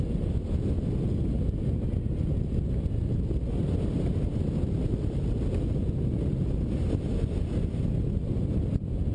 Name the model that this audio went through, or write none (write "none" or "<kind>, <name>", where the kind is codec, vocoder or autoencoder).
none